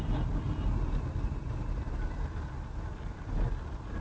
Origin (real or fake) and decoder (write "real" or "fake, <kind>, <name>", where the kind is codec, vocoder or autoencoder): real